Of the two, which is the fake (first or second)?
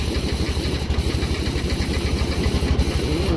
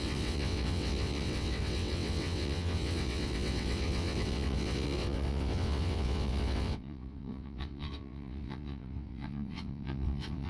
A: second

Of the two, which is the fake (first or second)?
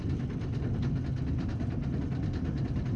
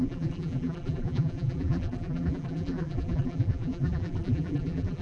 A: second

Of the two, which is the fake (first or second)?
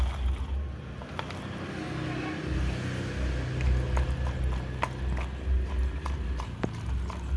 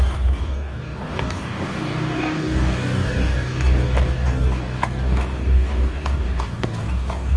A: second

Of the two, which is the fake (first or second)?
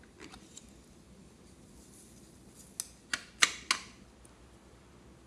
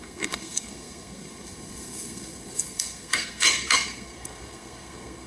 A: second